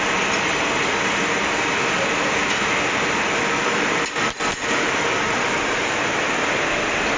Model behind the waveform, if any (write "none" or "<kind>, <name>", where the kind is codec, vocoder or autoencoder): none